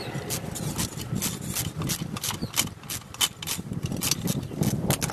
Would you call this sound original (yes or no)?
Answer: yes